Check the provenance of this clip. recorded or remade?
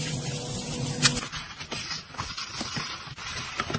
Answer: recorded